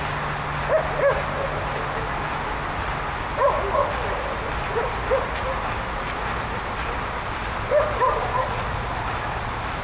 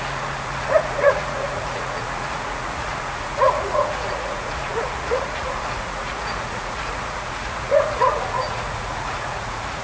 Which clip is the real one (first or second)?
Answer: first